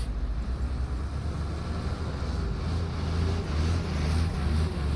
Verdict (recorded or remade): recorded